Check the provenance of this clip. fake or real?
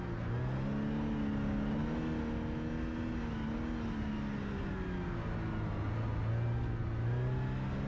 real